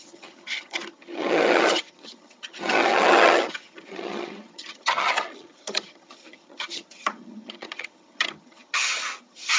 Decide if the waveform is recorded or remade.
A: remade